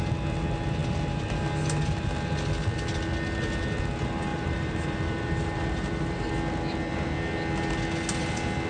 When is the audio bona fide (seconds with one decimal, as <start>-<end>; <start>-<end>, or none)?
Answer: 0.0-4.3; 6.3-8.7